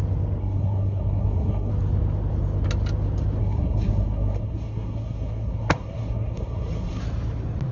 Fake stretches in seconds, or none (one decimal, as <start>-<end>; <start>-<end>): 0.4-1.7; 3.4-7.0